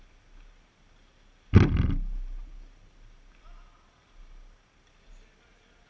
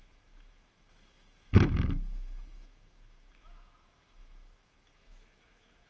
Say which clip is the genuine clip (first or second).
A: first